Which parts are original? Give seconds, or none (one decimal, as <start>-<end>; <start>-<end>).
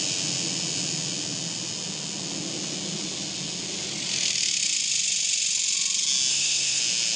0.0-6.3; 6.8-7.2